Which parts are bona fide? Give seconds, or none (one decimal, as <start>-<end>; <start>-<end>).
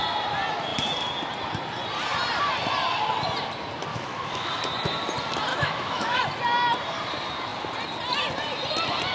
0.0-3.9; 4.5-5.5; 6.2-9.1